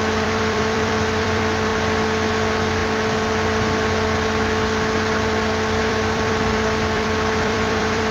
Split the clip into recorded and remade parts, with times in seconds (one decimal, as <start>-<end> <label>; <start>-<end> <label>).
0.0-1.7 remade; 1.7-2.3 recorded; 2.3-2.8 remade; 2.8-5.8 recorded; 5.8-8.1 remade